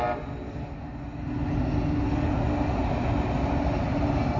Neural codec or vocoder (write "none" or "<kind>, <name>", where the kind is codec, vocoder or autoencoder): none